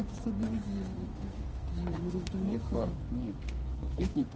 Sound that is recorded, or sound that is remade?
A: remade